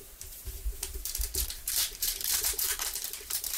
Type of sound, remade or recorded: remade